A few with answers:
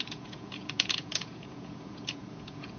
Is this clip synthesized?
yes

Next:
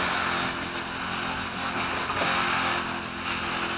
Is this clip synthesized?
no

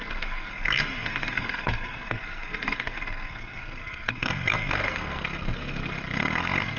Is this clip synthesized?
yes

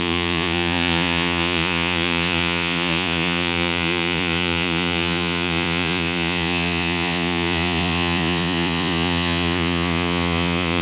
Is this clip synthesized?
yes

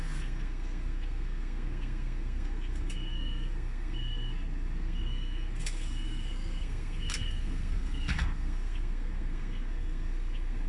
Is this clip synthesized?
yes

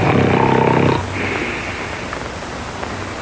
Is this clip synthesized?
no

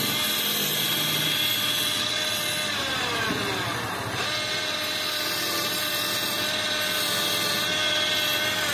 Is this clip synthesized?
no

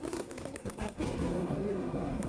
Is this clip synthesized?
yes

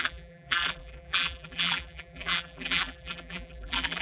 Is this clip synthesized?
yes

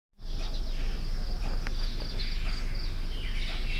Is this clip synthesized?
no